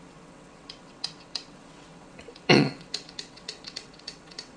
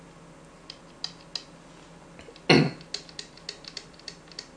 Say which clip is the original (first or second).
second